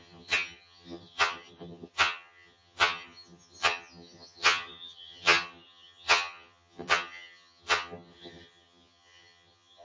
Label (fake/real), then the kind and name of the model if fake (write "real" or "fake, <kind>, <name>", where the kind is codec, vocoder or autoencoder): fake, vocoder, HiFi-GAN